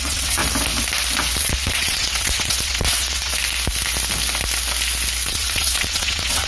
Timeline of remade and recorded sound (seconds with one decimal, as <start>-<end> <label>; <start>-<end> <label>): 0.0-0.4 remade; 0.4-1.4 recorded; 1.4-3.3 remade; 3.3-5.3 recorded; 5.3-6.5 remade

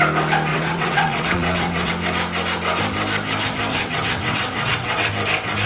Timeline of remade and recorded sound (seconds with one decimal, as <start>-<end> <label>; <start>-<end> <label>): 0.0-0.5 recorded; 0.5-1.9 remade; 1.9-3.7 recorded; 3.7-5.1 remade; 5.1-5.7 recorded

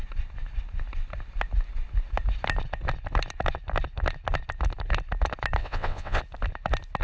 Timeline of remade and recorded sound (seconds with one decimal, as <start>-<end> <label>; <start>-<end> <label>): 0.0-5.6 recorded; 5.6-6.2 remade; 6.2-7.0 recorded